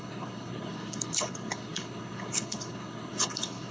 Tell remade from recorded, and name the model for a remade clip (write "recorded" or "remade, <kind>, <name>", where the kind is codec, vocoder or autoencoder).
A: remade, codec, HILCodec